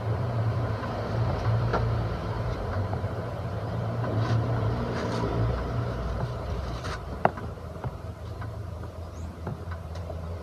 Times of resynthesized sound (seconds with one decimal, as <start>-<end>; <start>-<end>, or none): 0.0-1.7; 2.3-10.4